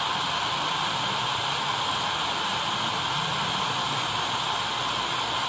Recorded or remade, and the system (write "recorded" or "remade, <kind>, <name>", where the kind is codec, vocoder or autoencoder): recorded